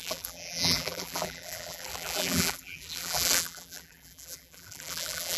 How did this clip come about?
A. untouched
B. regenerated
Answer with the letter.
B